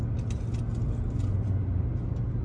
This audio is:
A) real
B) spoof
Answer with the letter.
A